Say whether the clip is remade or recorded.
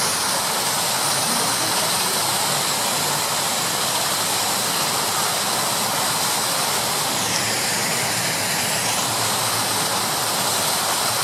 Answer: recorded